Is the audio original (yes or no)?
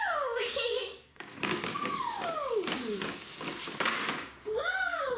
no